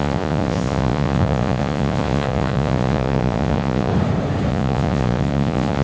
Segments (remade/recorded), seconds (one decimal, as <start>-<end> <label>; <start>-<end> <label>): 0.0-3.9 remade; 3.9-4.5 recorded; 4.5-5.8 remade

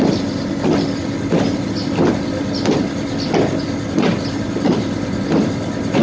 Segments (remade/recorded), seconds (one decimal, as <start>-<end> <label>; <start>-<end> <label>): 0.0-6.0 recorded

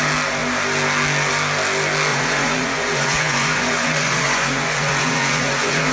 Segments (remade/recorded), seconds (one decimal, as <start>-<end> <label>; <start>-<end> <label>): 0.0-2.1 recorded; 2.1-5.9 remade

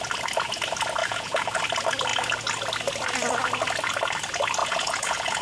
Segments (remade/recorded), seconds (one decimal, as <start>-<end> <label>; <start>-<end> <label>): 0.0-1.0 recorded; 1.0-1.6 remade; 1.6-4.6 recorded; 4.6-5.4 remade

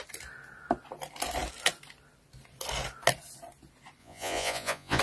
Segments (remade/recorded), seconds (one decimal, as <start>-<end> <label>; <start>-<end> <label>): 0.0-4.0 recorded; 4.0-5.0 remade

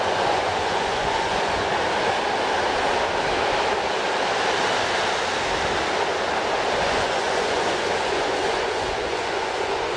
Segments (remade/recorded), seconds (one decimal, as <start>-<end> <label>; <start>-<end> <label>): 0.0-1.7 remade; 1.7-6.8 recorded; 6.8-10.0 remade